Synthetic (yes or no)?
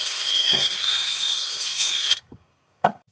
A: yes